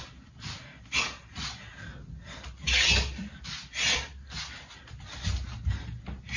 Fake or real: real